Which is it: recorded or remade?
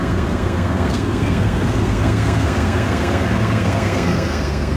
remade